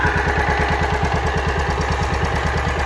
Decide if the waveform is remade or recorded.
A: recorded